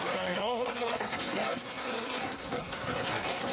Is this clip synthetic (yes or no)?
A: yes